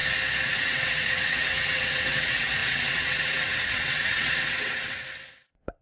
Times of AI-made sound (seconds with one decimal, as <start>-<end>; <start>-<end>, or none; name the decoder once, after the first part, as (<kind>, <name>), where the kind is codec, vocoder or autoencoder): 0.5-5.8 (vocoder, WaveNeXt)